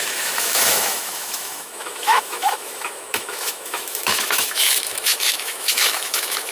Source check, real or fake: fake